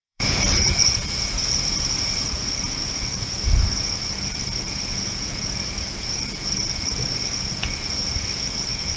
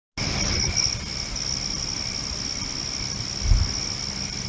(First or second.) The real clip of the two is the second